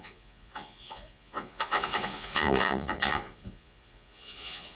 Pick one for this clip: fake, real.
fake